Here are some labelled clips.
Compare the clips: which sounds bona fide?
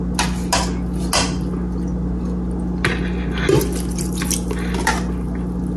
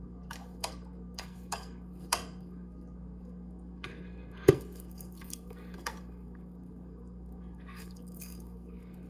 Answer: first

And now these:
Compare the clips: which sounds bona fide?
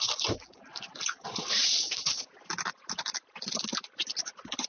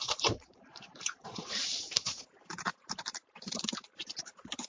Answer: first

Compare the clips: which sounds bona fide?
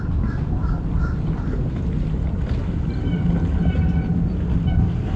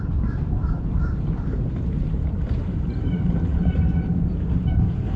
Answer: first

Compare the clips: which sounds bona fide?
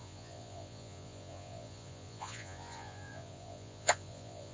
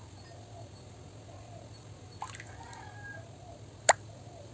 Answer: second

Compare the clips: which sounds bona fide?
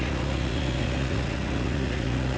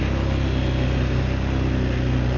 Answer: second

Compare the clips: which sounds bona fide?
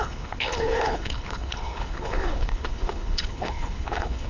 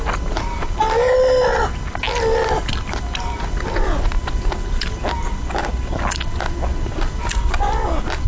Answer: second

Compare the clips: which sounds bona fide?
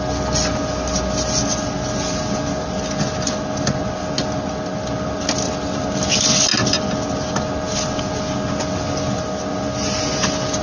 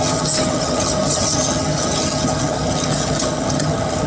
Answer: first